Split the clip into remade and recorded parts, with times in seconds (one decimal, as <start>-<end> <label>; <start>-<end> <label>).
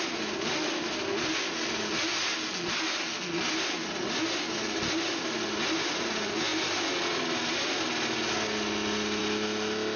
0.0-10.0 recorded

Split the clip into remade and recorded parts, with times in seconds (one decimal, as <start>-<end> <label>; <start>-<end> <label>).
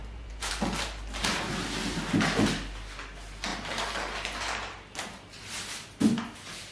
0.0-0.5 remade; 0.5-1.2 recorded; 1.2-2.0 remade; 2.0-3.5 recorded; 3.5-5.7 remade; 5.7-6.7 recorded